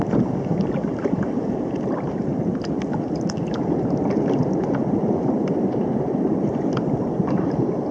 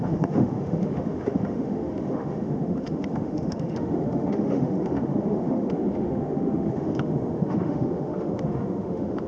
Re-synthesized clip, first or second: second